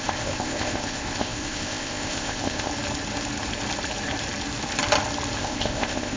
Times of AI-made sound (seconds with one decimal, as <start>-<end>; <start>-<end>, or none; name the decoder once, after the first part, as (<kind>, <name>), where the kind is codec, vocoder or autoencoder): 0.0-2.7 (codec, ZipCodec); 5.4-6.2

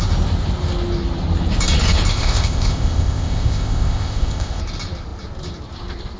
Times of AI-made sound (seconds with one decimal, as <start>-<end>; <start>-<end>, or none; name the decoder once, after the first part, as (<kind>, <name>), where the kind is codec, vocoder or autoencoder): 2.1-4.6 (codec, ZipCodec)

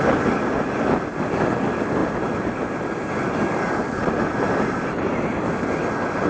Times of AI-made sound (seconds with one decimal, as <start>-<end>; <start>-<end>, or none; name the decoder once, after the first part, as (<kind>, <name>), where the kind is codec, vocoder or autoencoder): none

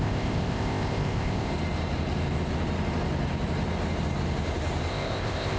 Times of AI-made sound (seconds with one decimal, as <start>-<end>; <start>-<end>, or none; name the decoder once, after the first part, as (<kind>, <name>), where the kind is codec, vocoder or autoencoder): 0.0-1.5 (codec, ZipCodec); 4.9-5.6

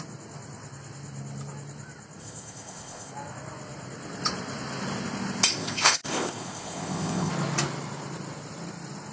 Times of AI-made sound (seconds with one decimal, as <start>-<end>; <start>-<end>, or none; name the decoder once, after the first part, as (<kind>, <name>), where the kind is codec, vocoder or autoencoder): 2.2-3.1 (codec, ZipCodec); 5.5-7.3

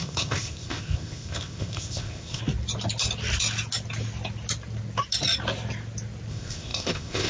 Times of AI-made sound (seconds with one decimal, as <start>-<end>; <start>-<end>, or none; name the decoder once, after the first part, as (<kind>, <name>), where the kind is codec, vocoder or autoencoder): 0.0-2.4 (codec, ZipCodec); 6.3-7.3